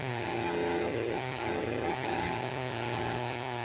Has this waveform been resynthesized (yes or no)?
yes